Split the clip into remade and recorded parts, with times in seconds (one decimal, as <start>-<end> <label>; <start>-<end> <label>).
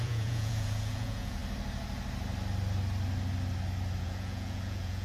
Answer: 0.0-1.4 remade; 1.4-4.0 recorded; 4.0-5.0 remade